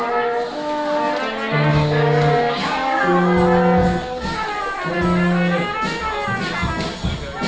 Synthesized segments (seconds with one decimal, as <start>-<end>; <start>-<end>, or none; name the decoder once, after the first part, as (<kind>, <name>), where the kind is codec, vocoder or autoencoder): 1.7-3.0 (codec, DAC); 3.8-4.5